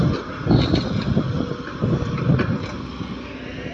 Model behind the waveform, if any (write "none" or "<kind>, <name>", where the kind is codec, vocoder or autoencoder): none